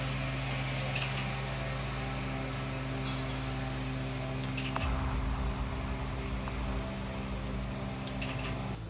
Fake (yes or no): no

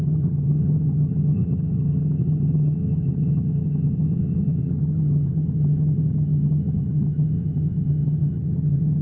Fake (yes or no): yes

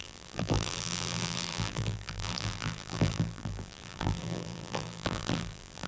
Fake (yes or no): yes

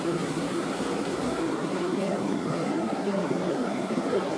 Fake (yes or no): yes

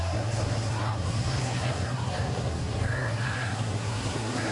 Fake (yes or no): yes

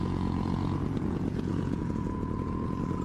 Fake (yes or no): yes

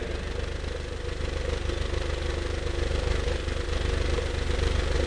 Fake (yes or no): no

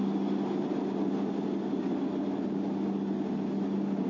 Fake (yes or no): no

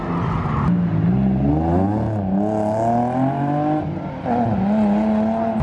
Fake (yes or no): no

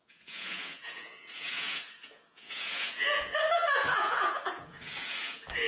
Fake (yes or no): yes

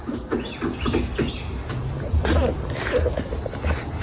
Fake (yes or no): no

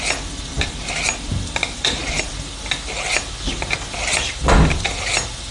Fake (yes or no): no